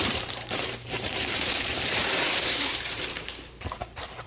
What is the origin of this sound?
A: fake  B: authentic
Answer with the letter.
A